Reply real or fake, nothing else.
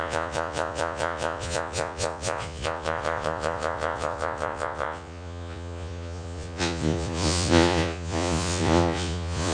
fake